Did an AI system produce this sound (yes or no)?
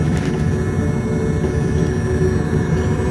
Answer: no